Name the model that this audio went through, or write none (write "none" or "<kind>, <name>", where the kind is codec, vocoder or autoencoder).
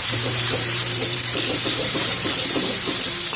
vocoder, BigVGAN v2